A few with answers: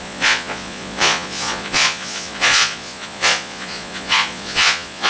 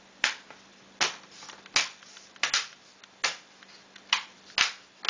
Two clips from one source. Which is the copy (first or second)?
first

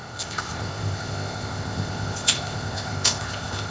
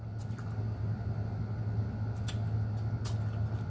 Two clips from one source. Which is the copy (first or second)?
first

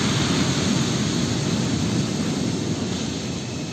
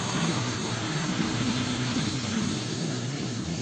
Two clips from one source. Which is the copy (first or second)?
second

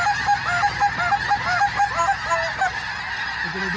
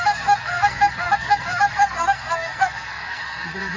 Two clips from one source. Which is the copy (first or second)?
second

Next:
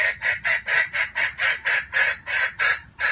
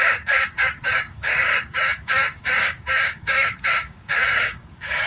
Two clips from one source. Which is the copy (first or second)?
second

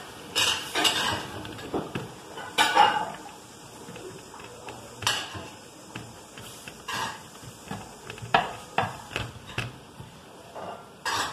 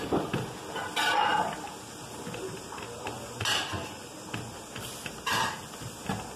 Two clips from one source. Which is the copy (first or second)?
first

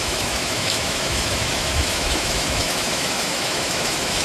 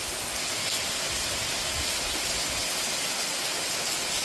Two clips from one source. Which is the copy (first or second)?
first